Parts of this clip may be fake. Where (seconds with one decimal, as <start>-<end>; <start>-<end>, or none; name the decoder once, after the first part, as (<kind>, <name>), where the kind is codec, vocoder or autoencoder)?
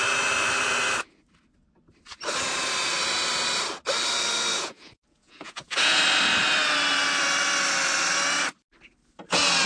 4.5-6.0 (vocoder, Vocos)